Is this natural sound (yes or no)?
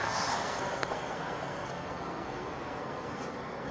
no